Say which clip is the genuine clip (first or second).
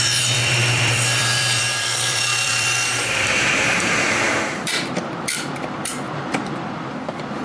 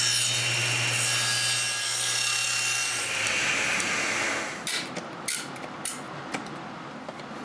second